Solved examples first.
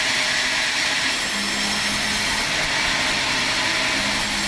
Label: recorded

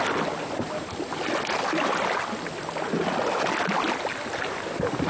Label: recorded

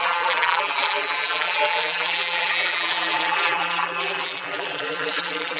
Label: remade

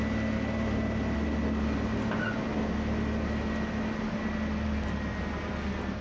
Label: recorded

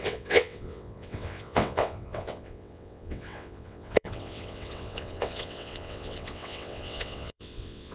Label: remade